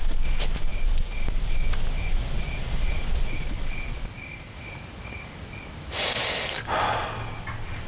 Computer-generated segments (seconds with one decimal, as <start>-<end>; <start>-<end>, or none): 2.2-4.2